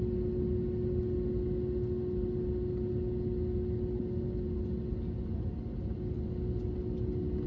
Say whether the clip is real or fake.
real